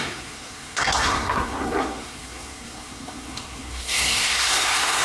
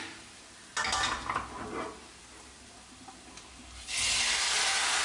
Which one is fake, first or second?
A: first